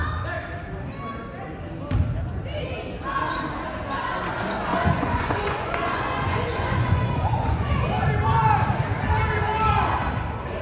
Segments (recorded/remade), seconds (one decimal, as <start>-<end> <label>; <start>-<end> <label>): 0.0-4.7 recorded; 4.7-7.7 remade; 7.7-10.6 recorded